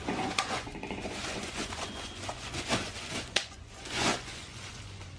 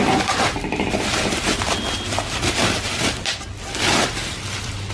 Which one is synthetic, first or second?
first